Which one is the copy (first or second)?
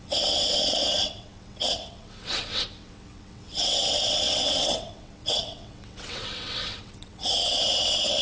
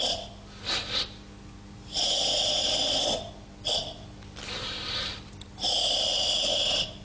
first